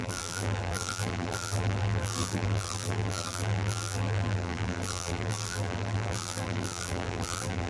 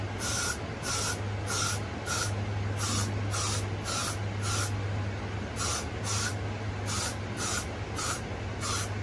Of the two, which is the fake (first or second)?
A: first